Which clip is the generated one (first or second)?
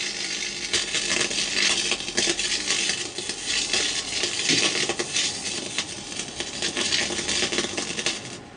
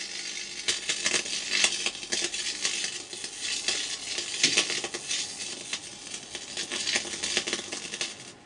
first